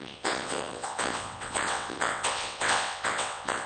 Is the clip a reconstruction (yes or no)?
yes